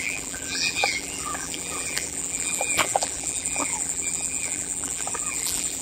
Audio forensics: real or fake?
fake